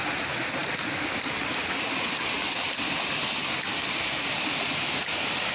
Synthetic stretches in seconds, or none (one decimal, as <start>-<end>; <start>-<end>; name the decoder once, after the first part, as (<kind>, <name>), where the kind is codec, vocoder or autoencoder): none